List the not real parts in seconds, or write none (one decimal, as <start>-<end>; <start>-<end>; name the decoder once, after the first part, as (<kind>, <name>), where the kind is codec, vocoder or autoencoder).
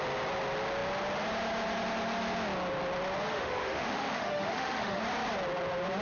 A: 3.3-5.0 (autoencoder, DAC-VAE)